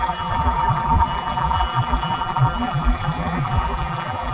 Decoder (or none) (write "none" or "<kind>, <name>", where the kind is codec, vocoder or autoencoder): vocoder, BigVGAN v2